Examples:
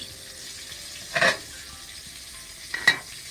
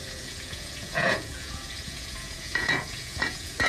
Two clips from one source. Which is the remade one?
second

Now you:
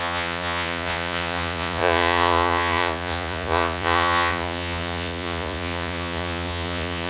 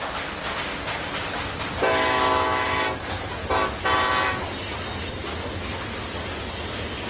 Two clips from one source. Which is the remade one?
first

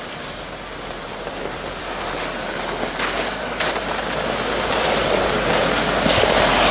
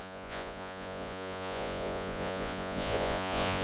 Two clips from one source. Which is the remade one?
second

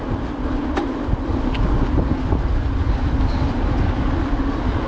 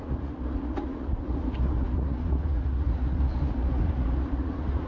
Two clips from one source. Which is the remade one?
second